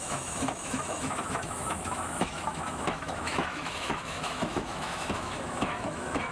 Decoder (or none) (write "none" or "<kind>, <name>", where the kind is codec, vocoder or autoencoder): autoencoder, DAC-VAE